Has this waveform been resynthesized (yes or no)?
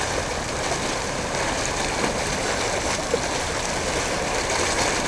no